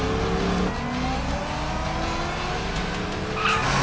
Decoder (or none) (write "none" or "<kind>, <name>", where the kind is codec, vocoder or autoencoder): none